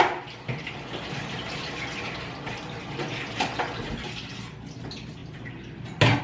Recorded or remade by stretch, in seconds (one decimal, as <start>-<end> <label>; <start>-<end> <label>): 0.0-6.2 recorded